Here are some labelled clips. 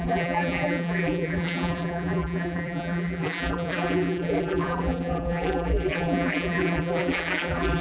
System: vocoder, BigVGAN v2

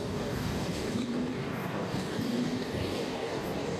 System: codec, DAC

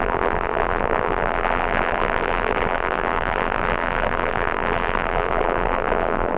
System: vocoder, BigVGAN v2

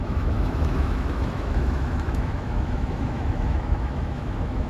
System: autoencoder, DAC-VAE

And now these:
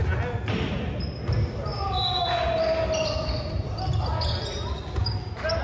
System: none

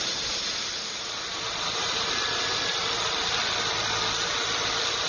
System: none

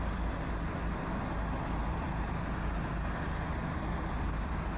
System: none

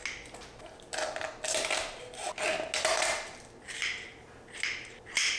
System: none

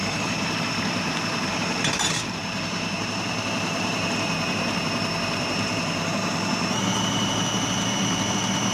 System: vocoder, BigVGAN v2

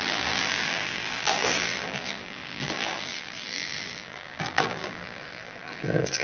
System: vocoder, BigVGAN v2